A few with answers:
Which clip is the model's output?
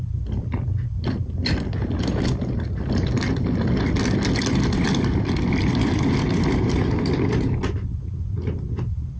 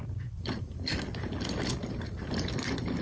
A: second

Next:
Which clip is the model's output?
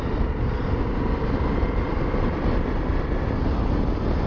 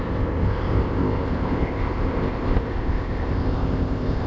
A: second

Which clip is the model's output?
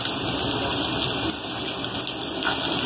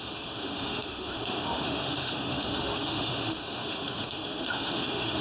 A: second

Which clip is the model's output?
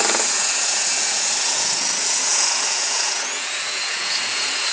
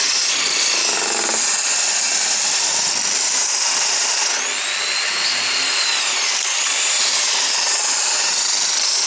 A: first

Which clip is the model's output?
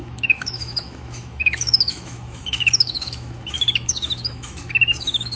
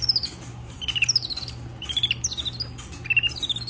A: first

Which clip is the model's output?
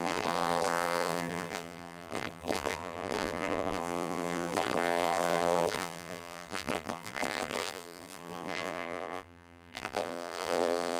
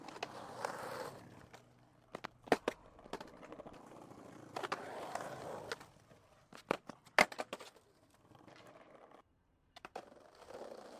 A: first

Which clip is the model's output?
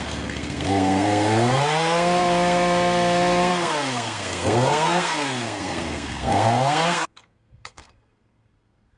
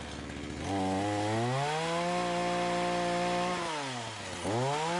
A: first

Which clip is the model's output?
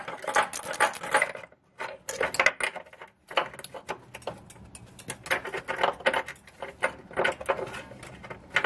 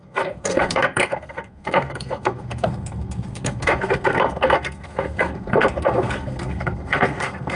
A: second